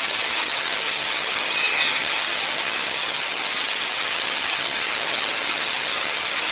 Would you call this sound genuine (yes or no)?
no